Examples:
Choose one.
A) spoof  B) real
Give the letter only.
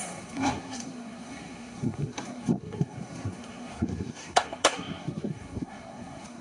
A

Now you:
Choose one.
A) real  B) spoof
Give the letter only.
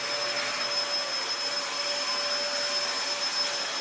A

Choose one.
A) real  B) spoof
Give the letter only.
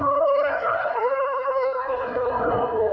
B